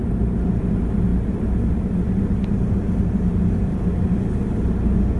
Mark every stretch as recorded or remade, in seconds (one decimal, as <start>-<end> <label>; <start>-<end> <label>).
0.0-1.1 recorded; 1.1-4.2 remade; 4.2-5.2 recorded